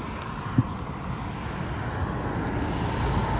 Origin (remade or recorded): recorded